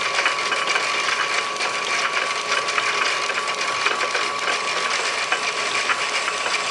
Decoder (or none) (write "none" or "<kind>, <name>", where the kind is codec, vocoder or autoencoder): vocoder, BigVGAN v2